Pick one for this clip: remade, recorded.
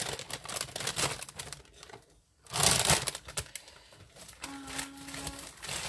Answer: recorded